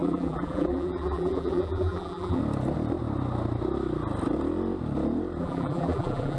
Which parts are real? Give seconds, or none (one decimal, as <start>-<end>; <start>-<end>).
2.4-5.4

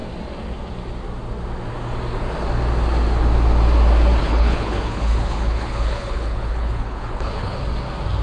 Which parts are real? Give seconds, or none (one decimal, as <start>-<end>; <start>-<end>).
0.0-4.2; 7.6-8.2

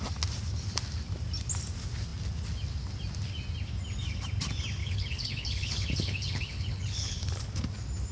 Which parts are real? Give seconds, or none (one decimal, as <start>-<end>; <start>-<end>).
0.0-4.8; 7.5-8.1

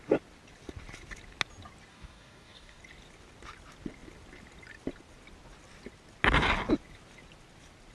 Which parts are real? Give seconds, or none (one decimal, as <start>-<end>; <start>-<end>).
0.0-1.9; 2.8-7.9

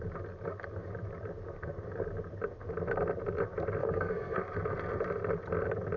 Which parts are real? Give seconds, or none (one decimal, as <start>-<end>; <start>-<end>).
0.0-3.8; 4.4-6.0

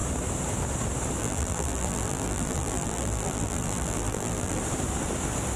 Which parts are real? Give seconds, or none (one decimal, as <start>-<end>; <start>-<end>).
0.0-1.2; 4.6-5.6

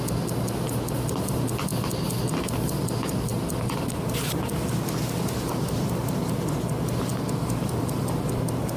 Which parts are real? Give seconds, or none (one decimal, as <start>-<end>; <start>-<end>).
0.0-8.8

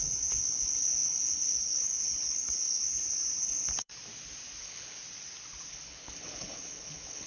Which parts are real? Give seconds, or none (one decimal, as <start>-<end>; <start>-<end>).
2.8-3.4; 3.9-4.6; 5.0-5.7